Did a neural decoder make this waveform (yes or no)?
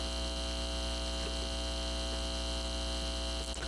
no